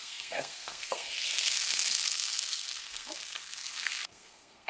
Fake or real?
fake